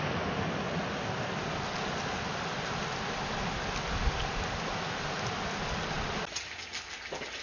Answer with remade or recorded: recorded